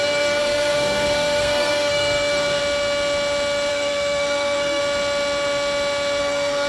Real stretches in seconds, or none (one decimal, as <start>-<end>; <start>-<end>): 2.6-3.7; 4.8-6.2